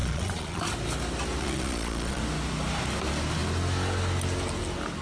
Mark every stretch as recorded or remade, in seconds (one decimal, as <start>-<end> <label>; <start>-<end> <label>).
0.0-0.6 remade; 0.6-1.4 recorded; 1.4-2.2 remade; 2.2-5.0 recorded

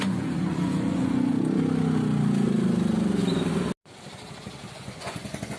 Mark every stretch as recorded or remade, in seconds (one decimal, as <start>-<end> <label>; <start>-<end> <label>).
0.0-1.3 remade; 1.3-4.7 recorded; 4.7-5.6 remade

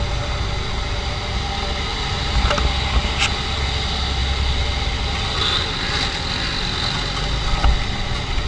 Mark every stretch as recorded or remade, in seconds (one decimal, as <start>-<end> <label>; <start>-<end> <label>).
0.0-8.5 recorded

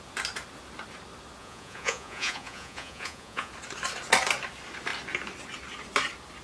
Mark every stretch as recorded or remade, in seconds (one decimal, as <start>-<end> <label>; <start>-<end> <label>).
0.0-1.4 recorded; 1.4-3.5 remade; 3.5-6.4 recorded

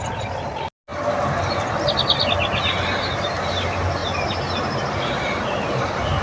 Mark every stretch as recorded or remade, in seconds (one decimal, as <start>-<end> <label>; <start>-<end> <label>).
0.0-6.2 recorded

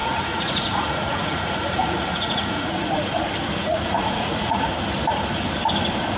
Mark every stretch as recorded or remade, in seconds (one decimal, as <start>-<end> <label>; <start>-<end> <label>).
0.0-3.1 remade; 3.1-3.6 recorded; 3.6-4.7 remade; 4.7-6.2 recorded

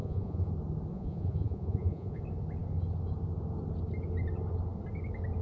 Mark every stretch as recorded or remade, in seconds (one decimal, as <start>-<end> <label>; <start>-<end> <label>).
0.0-0.5 remade; 0.5-0.9 recorded; 0.9-2.2 remade; 2.2-5.4 recorded